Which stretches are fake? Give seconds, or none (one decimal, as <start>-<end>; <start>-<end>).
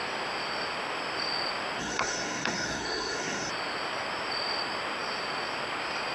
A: 1.8-3.5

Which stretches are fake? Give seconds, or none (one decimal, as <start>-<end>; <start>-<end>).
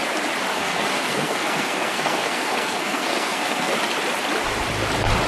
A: 0.5-3.7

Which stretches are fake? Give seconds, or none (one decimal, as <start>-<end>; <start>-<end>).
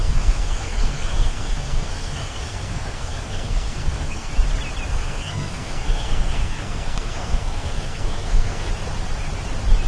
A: 0.0-4.3; 4.9-8.7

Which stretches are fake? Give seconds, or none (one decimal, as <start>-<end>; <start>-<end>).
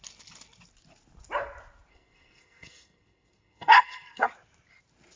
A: 1.9-4.3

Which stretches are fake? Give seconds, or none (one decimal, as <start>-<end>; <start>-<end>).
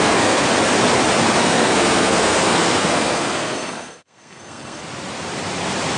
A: 0.0-0.5; 1.4-4.8